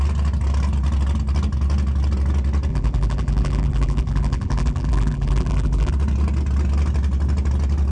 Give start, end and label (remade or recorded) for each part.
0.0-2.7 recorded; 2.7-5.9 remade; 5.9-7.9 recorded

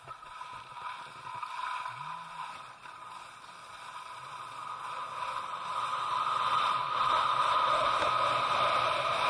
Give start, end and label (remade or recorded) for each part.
0.0-9.3 recorded